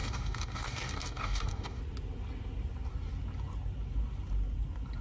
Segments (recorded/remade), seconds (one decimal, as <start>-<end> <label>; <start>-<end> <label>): 0.0-1.8 remade; 1.8-5.0 recorded